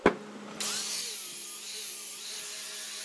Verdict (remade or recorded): recorded